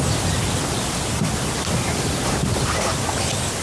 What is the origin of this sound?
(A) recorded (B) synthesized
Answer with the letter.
A